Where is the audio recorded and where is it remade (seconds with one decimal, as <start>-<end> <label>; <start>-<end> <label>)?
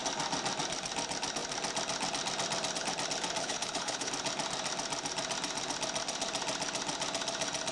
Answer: 0.0-3.4 recorded; 3.4-4.1 remade; 4.1-7.7 recorded